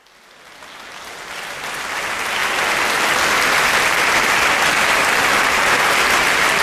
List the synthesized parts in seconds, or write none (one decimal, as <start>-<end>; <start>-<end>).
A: none